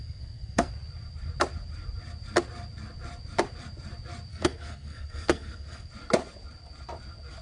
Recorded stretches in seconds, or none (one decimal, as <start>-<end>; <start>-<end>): 0.7-4.3; 5.9-7.4